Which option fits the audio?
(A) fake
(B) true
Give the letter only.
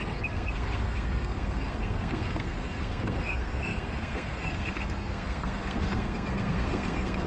A